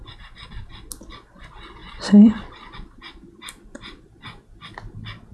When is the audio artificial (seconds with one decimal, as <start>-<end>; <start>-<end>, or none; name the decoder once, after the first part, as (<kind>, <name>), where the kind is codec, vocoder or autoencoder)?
none